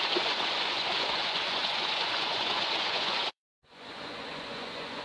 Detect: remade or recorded remade